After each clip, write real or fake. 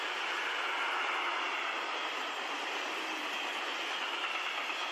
real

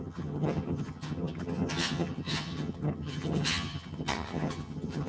fake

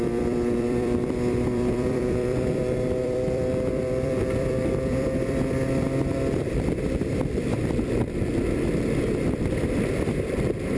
fake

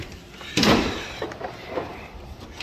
fake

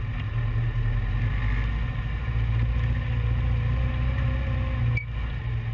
real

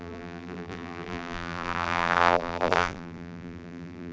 fake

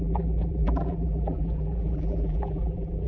fake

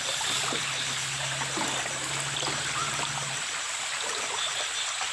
real